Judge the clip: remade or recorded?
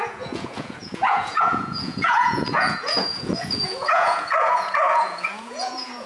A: remade